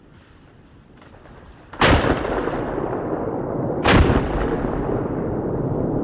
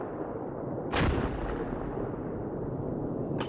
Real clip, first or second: second